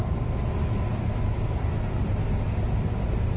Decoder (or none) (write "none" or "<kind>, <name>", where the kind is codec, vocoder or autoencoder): none